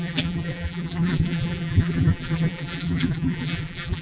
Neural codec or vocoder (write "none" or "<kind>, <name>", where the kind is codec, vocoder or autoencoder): vocoder, BigVGAN v2